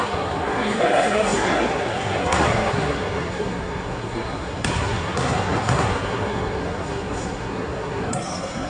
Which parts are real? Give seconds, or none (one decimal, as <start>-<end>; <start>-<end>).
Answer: none